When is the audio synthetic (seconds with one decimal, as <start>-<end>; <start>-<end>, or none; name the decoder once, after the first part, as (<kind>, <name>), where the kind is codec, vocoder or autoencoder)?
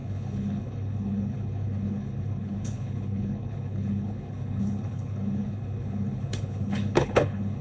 0.0-7.6 (codec, HILCodec)